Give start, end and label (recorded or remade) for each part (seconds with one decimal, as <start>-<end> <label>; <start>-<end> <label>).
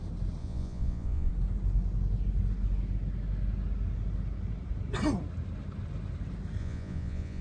0.0-0.4 recorded; 0.4-1.3 remade; 1.3-6.6 recorded; 6.6-7.4 remade